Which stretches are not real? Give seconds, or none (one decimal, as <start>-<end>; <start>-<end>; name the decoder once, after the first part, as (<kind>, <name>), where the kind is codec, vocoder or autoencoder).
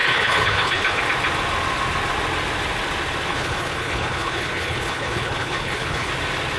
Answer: 0.0-1.0 (codec, HILCodec); 3.3-6.1